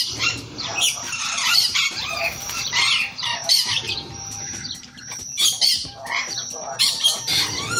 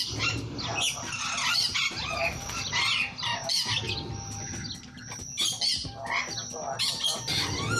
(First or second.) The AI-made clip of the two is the first